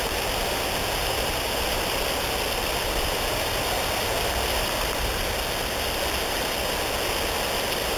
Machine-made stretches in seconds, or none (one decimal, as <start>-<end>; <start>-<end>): 1.0-5.2